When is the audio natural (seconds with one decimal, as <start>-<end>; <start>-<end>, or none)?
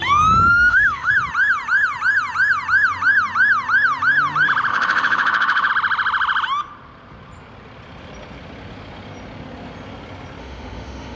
0.0-0.5; 1.1-4.7; 5.7-10.4